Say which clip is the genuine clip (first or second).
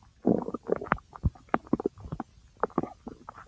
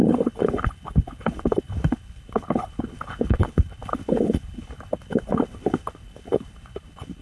first